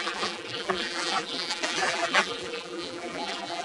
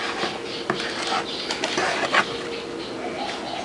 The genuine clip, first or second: second